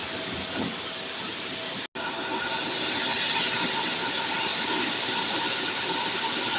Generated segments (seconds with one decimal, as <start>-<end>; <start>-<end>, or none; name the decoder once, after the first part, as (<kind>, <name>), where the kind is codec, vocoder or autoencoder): none